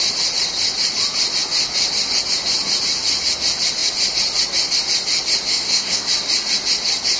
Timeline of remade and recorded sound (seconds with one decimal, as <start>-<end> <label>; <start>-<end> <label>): 0.0-5.5 recorded; 5.5-6.1 remade; 6.1-7.2 recorded